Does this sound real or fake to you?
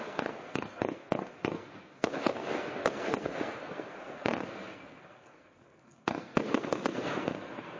fake